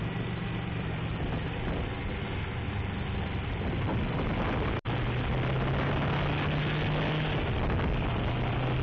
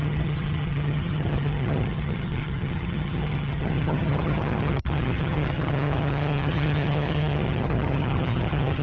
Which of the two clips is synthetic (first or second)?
second